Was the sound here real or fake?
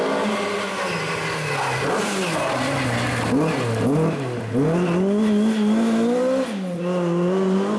real